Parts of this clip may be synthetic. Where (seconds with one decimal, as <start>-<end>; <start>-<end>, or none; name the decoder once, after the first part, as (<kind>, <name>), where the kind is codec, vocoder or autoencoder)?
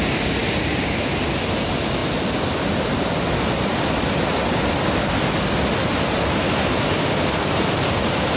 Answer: none